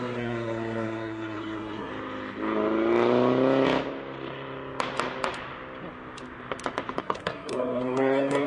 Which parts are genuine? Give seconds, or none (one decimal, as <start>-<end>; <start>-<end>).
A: 1.9-7.0